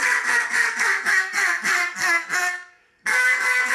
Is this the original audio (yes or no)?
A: no